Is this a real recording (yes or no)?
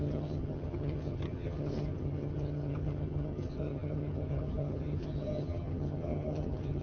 no